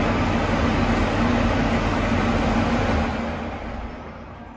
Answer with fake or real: real